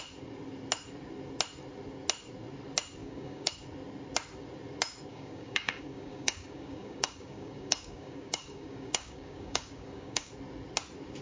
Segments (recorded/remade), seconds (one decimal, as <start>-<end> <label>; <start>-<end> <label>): 0.0-3.0 recorded; 3.0-3.5 remade; 3.5-5.1 recorded; 5.1-10.3 remade; 10.3-11.2 recorded